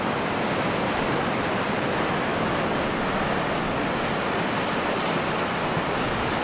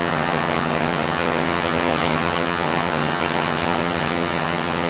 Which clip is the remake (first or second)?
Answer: second